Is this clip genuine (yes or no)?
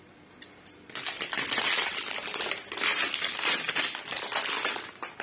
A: yes